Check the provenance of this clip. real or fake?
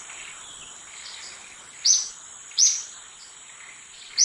fake